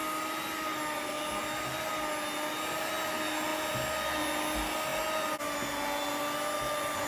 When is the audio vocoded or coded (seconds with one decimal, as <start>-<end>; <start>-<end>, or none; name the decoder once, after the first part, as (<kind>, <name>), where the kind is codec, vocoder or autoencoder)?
none